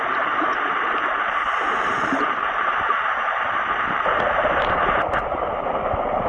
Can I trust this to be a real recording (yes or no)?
no